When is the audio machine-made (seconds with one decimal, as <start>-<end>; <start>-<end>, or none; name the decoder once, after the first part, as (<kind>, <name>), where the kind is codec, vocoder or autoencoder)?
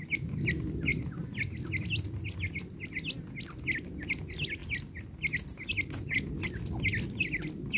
none